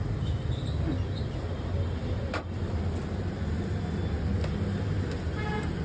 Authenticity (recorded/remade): recorded